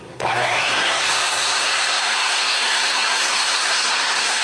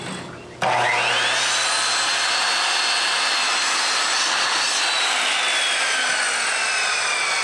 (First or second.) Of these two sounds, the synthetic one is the first